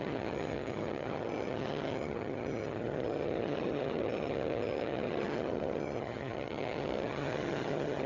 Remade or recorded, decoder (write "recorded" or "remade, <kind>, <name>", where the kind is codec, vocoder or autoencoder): remade, vocoder, HiFi-GAN